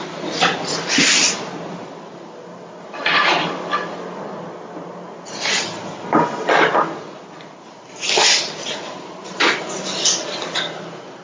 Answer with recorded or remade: recorded